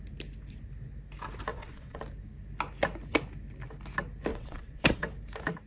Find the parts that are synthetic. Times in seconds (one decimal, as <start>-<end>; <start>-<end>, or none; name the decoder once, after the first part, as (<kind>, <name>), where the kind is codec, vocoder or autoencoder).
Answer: 1.5-2.0 (vocoder, WaveNeXt); 4.3-5.1